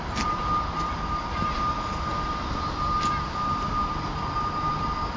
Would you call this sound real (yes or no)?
yes